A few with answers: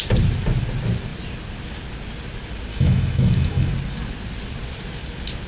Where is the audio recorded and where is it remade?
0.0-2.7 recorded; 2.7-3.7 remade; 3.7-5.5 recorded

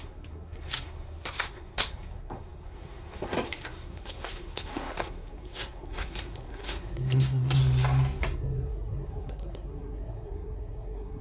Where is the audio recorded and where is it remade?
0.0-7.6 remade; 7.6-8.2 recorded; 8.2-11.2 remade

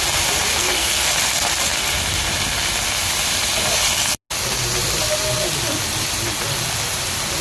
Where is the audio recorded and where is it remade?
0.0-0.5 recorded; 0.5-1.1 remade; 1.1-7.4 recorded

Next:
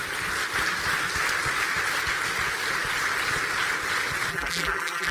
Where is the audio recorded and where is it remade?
0.0-4.3 recorded; 4.3-5.1 remade

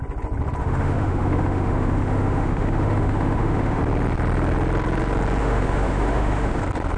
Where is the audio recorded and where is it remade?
0.0-0.6 recorded; 0.6-3.8 remade; 3.8-5.4 recorded; 5.4-6.6 remade; 6.6-7.0 recorded

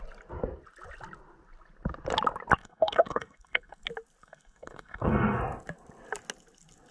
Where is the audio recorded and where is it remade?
0.0-2.6 recorded; 2.6-3.8 remade; 3.8-4.2 recorded; 4.2-5.4 remade; 5.4-6.9 recorded